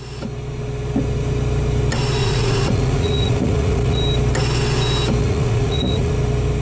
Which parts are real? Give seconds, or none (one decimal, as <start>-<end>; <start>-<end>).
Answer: 0.0-2.2; 4.0-5.2; 6.1-6.6